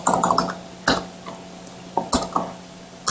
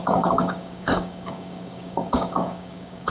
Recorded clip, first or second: first